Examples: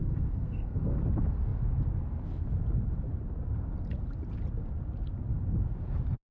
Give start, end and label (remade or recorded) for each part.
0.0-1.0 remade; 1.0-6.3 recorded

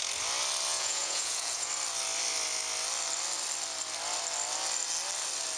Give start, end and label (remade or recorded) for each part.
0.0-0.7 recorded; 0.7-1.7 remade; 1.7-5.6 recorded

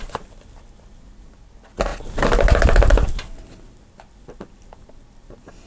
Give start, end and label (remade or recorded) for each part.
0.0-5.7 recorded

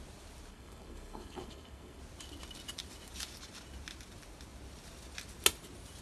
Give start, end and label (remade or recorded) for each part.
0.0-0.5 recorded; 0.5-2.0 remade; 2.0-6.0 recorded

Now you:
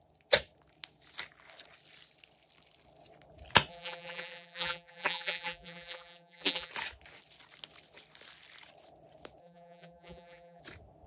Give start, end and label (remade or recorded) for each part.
0.0-3.7 recorded; 3.7-6.7 remade; 6.7-9.4 recorded; 9.4-10.6 remade; 10.6-11.1 recorded

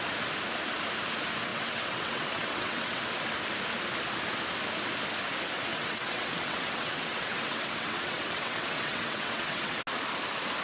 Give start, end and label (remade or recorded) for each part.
0.0-1.5 recorded; 1.5-3.0 remade; 3.0-5.7 recorded; 5.7-9.8 remade; 9.8-10.6 recorded

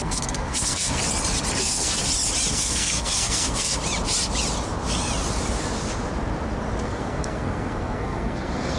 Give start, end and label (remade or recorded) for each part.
0.0-1.0 remade; 1.0-1.6 recorded; 1.6-2.0 remade; 2.0-2.5 recorded; 2.5-3.8 remade; 3.8-6.8 recorded; 6.8-8.8 remade